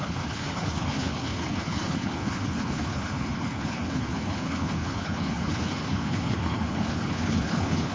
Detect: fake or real fake